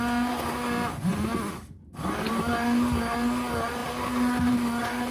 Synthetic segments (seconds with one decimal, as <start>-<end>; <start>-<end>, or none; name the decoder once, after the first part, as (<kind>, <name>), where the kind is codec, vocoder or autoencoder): none